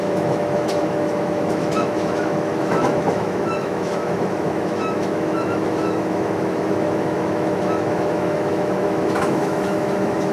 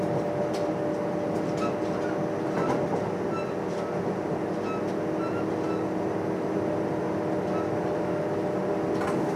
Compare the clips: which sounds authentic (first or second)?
second